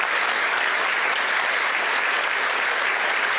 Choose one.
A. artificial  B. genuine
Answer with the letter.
B